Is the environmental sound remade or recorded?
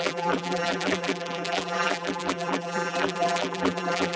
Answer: remade